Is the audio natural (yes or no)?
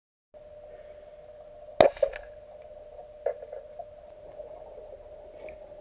yes